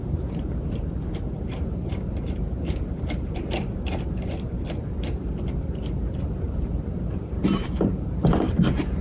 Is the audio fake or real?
fake